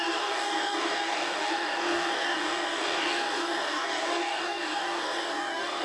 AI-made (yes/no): yes